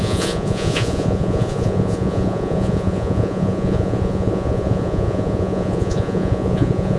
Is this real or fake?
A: fake